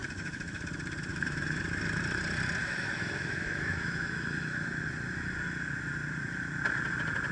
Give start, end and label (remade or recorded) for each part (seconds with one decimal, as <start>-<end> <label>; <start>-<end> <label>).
0.0-0.6 remade; 0.6-1.1 recorded; 1.1-1.6 remade; 1.6-2.6 recorded; 2.6-4.8 remade; 4.8-7.3 recorded